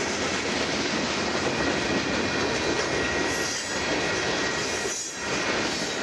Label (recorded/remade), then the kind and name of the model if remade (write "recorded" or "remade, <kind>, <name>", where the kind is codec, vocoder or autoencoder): recorded